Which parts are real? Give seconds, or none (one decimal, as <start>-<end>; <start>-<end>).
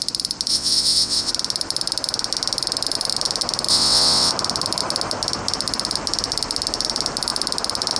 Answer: 0.0-0.5; 1.3-3.7; 4.3-8.0